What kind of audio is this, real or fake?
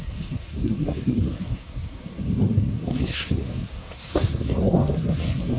fake